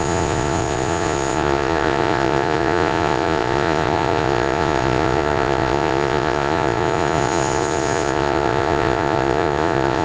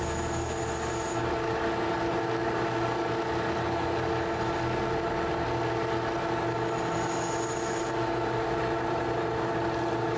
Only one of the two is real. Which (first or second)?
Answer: second